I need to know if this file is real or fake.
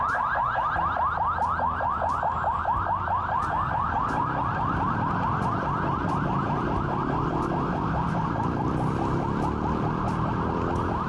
fake